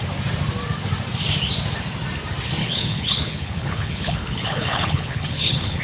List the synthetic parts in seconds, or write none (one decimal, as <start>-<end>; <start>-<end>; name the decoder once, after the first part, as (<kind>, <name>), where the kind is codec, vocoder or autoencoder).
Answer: 2.6-5.8 (codec, HILCodec)